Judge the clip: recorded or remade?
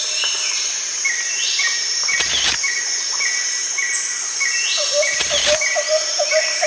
remade